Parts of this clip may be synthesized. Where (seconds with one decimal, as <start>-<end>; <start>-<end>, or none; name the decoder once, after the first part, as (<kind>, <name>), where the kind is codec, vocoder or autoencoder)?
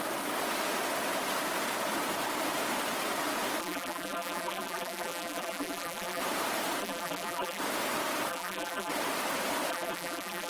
3.6-6.2 (vocoder, BigVGAN v2); 6.8-7.6; 8.3-8.9; 9.7-10.5